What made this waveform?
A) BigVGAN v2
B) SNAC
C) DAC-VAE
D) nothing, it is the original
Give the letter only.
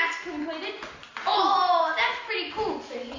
D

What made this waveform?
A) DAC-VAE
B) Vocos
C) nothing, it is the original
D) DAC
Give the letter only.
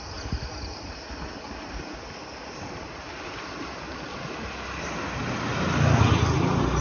C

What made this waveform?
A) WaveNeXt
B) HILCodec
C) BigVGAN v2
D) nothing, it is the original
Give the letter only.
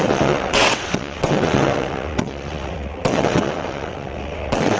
A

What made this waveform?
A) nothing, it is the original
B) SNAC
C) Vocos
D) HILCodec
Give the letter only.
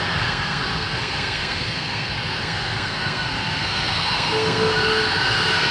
B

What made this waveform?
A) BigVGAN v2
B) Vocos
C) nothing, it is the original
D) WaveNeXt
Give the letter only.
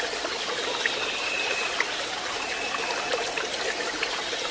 C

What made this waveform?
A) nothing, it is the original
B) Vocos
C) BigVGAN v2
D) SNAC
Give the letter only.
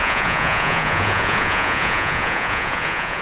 B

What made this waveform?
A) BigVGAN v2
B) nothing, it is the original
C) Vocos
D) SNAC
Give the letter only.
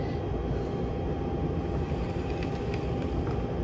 B